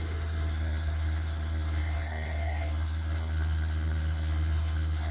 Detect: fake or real fake